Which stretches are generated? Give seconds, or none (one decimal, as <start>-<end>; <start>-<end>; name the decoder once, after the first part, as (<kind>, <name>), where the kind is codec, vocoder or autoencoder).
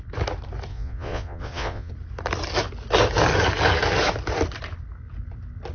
0.7-1.9 (vocoder, Vocos)